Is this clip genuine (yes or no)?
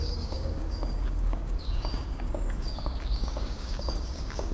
no